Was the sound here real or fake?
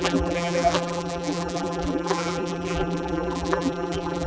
fake